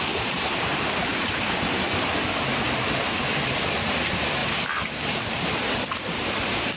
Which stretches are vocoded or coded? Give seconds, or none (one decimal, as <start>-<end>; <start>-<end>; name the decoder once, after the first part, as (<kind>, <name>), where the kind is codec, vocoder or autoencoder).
0.0-6.8 (vocoder, BigVGAN v2)